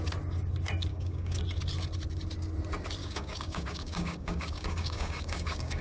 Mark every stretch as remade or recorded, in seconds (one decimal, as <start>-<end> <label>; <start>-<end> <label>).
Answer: 0.0-0.9 recorded; 0.9-1.4 remade; 1.4-3.0 recorded; 3.0-5.8 remade